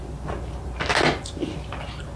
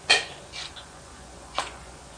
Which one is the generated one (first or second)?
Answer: second